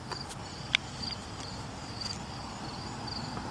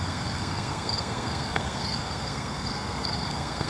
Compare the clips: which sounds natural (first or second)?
first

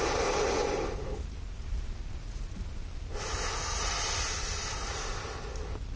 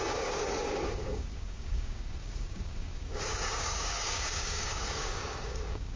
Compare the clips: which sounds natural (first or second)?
first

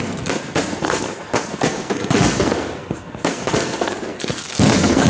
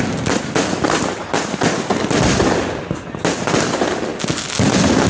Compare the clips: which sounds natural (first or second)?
second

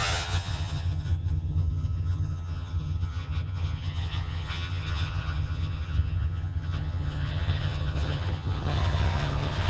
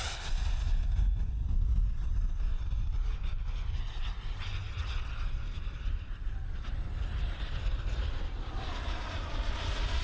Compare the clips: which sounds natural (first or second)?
second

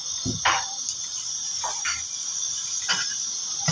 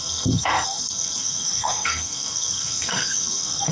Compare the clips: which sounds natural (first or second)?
first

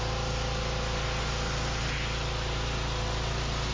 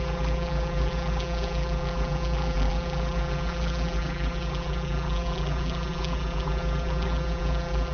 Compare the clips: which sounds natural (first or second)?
first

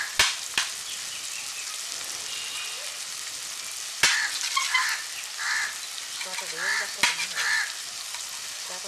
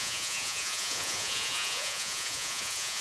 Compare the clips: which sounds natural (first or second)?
first